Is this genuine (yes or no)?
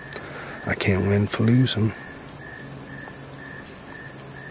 yes